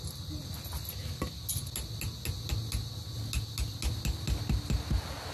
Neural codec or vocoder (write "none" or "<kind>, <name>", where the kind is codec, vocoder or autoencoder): none